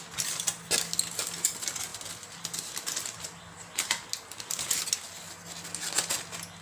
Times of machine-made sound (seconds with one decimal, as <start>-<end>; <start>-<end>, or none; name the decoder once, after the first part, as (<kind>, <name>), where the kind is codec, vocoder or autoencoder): none